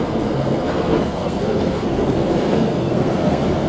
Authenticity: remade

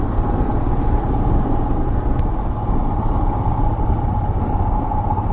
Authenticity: recorded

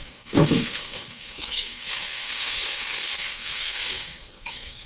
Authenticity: remade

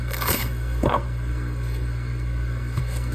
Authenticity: remade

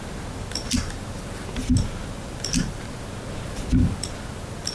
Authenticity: recorded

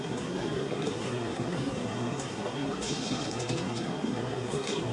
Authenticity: remade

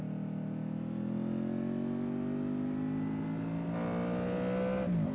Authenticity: recorded